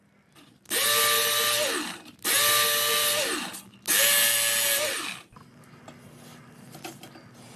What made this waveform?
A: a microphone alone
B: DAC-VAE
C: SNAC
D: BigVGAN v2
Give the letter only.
A